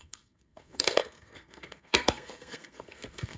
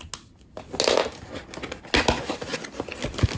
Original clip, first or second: second